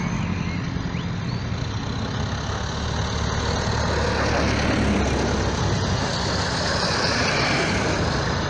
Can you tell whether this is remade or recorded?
recorded